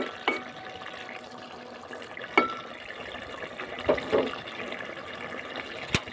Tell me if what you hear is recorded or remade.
recorded